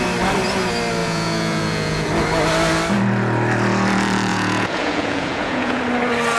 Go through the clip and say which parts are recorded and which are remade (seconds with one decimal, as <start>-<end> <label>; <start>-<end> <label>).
0.0-1.0 recorded; 1.0-2.1 remade; 2.1-4.3 recorded; 4.3-5.8 remade; 5.8-6.4 recorded